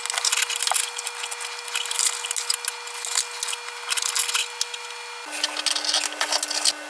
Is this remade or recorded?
recorded